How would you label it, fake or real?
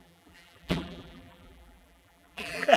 fake